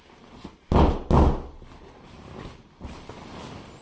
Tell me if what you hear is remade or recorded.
recorded